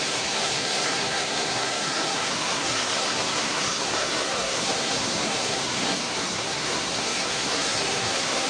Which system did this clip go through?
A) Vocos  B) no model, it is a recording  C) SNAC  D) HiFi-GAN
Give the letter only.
C